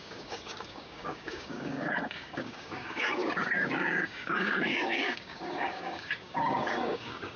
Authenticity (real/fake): fake